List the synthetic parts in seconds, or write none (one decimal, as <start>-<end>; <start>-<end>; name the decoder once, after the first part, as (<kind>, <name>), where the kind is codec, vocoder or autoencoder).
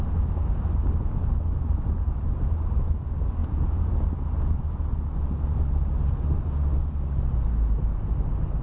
3.4-3.9 (vocoder, Vocos)